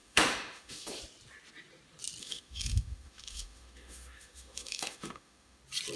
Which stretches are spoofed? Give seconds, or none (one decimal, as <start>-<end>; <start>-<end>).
0.0-1.0; 2.2-5.6